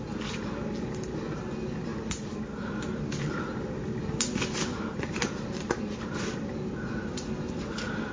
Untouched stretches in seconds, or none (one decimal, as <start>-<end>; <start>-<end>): 0.0-1.9; 3.5-4.7; 5.2-7.1